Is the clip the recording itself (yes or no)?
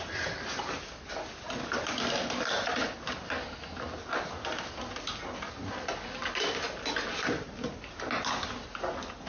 yes